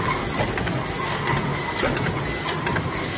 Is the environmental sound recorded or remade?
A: recorded